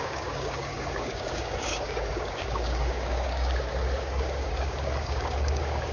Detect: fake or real fake